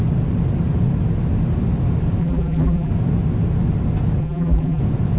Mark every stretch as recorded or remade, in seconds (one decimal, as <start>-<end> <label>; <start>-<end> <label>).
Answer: 0.0-2.2 recorded; 2.2-2.9 remade; 2.9-4.2 recorded; 4.2-4.8 remade; 4.8-5.2 recorded